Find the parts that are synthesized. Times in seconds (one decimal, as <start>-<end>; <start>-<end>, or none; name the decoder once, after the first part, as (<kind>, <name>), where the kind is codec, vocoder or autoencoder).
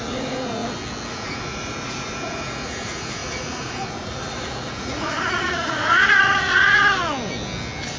0.0-0.6 (vocoder, Vocos); 1.1-6.8